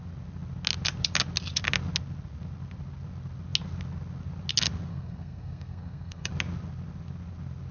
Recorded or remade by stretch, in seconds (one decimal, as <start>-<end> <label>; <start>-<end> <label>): 0.0-4.9 recorded; 4.9-6.3 remade; 6.3-7.7 recorded